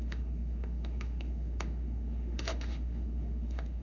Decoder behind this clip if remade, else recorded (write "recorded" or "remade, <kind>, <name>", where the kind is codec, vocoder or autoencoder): remade, autoencoder, DAC-VAE